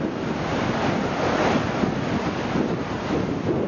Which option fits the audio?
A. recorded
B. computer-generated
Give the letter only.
A